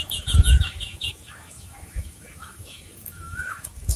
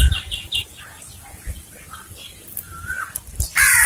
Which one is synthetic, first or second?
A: first